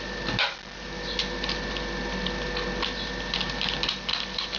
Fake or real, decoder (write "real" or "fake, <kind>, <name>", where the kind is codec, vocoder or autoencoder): real